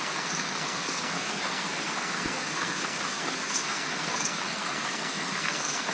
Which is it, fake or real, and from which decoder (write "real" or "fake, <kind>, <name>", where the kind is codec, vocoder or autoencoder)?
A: fake, codec, SNAC